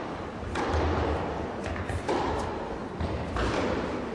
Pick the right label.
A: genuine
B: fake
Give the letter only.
A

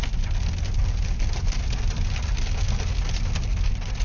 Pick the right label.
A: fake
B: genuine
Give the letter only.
B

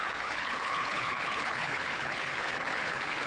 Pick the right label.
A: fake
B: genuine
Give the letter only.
A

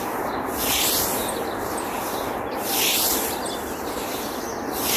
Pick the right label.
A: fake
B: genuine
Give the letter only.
B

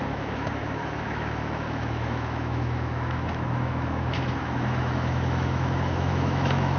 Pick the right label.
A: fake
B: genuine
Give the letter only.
A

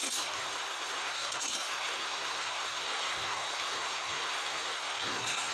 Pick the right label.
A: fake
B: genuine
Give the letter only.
A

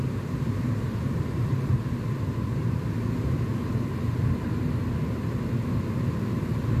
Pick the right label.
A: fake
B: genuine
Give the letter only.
B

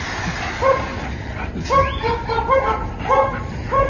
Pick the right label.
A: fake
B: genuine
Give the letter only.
B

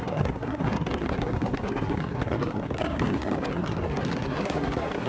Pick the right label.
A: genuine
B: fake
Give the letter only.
B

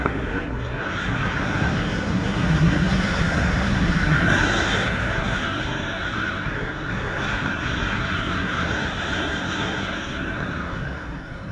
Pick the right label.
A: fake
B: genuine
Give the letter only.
A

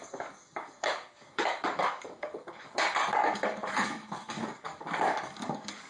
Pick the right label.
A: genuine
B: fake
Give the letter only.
B